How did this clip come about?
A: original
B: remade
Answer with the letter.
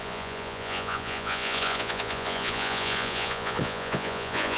B